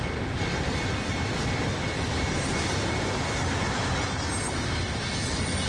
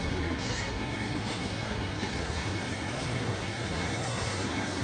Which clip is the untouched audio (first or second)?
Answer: first